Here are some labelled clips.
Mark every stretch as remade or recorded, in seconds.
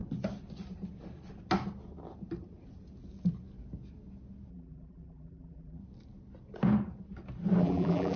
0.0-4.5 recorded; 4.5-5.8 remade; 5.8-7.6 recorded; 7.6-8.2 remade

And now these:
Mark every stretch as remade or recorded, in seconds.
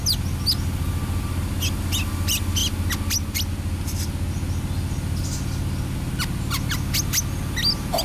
0.0-8.0 recorded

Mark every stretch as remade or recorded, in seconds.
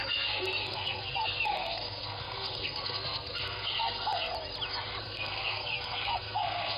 0.0-4.3 remade; 4.3-5.0 recorded; 5.0-6.8 remade